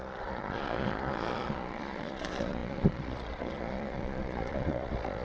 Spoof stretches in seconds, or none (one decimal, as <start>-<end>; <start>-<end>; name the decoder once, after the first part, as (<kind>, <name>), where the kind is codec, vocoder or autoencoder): 0.0-5.2 (vocoder, Vocos)